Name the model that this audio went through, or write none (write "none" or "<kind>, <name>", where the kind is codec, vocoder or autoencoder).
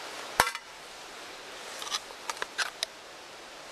vocoder, BigVGAN v2